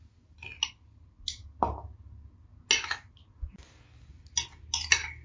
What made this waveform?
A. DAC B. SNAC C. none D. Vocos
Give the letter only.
C